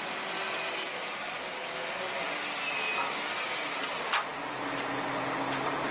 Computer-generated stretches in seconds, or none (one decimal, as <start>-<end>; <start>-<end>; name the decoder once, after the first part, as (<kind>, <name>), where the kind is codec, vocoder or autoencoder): none